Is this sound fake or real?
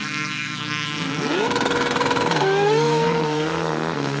fake